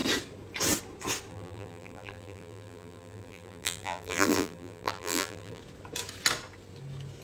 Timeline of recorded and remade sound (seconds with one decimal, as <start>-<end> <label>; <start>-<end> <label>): 0.0-1.3 recorded; 1.3-5.6 remade; 5.6-7.2 recorded